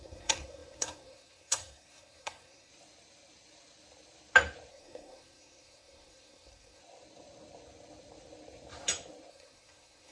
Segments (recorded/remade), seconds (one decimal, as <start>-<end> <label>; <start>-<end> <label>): 0.0-2.7 remade; 2.7-4.7 recorded; 4.7-6.8 remade; 6.8-9.3 recorded; 9.3-10.1 remade